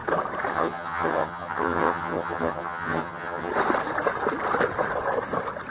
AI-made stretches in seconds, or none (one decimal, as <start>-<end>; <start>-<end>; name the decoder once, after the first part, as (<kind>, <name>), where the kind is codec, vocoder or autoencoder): 0.5-3.5 (vocoder, HiFi-GAN)